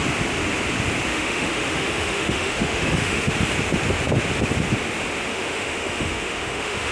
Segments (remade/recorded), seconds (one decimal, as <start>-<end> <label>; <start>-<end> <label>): 0.0-1.1 recorded; 1.1-3.3 remade; 3.3-5.3 recorded; 5.3-6.9 remade